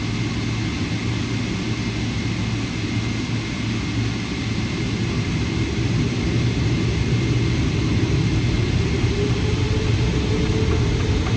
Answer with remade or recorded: recorded